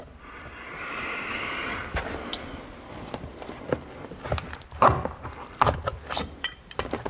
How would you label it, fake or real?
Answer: fake